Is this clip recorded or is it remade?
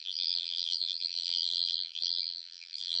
remade